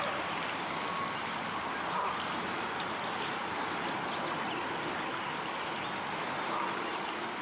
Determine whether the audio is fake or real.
real